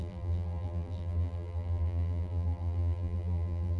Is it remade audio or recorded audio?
remade